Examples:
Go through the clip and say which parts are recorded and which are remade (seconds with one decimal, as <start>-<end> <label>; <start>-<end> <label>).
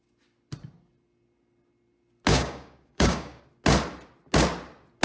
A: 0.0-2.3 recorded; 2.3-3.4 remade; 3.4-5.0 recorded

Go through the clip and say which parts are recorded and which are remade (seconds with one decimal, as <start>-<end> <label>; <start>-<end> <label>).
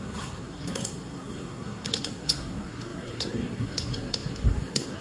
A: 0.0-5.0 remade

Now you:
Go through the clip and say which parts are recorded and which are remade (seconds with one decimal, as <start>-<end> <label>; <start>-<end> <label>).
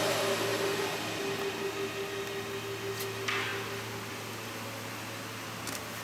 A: 0.0-6.0 recorded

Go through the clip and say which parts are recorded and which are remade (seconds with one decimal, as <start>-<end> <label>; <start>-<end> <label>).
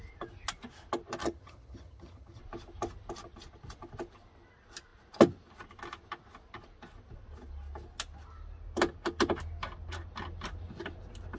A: 0.0-1.2 recorded; 1.2-2.4 remade; 2.4-11.4 recorded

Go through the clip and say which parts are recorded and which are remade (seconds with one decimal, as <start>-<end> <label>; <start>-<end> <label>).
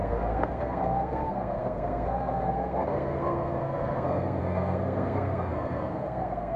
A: 0.0-6.6 remade